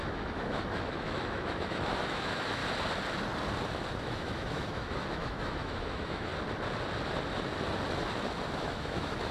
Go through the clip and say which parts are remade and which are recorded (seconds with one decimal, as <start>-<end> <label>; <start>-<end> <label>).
0.0-2.6 remade; 2.6-4.0 recorded; 4.0-6.3 remade; 6.3-8.6 recorded; 8.6-9.3 remade